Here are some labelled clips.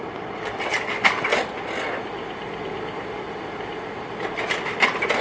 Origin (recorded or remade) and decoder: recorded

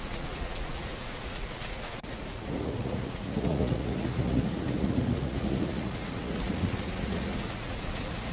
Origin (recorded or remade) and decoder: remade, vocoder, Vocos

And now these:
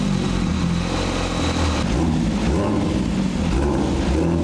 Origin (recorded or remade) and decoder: recorded